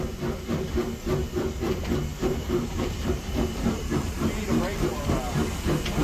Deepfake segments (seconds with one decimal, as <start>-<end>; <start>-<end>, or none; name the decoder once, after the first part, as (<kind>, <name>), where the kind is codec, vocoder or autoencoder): 2.1-5.3 (vocoder, BigVGAN v2)